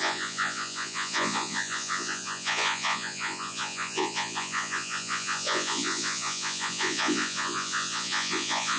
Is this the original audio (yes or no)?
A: no